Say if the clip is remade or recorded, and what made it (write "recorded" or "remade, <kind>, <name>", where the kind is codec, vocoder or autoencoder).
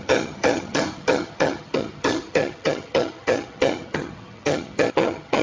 remade, vocoder, HiFi-GAN